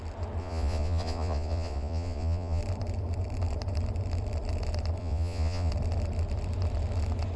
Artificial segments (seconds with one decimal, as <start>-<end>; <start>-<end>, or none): 0.4-2.6; 5.0-5.7